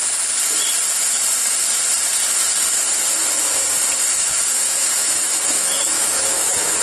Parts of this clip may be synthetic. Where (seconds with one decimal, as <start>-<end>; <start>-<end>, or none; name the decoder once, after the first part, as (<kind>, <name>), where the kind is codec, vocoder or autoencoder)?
4.1-6.8 (autoencoder, DAC-VAE)